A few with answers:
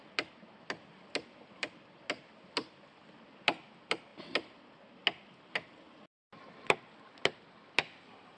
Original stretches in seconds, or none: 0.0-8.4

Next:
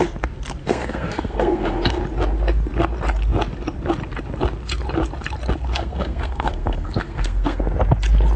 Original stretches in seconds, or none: 0.0-0.6; 2.0-5.7; 7.6-8.4

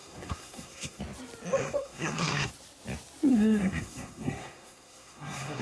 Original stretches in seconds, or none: 1.0-1.6; 2.5-3.3

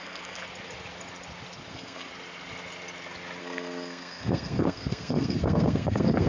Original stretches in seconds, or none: 0.4-1.7; 2.1-3.4

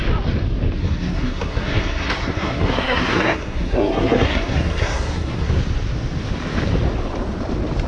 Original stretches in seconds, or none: 0.0-0.8; 5.5-7.9

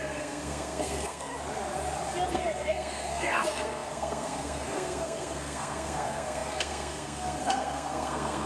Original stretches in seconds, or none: 1.3-2.3

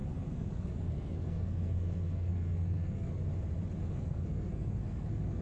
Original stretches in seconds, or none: 3.2-3.8

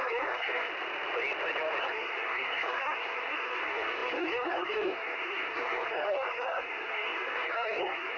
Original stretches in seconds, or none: 0.7-1.8